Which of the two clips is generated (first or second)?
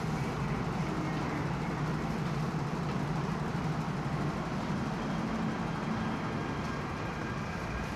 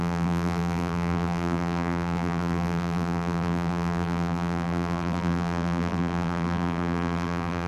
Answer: second